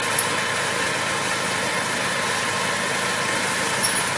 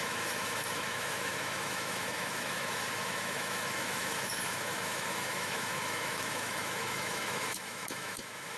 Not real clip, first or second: second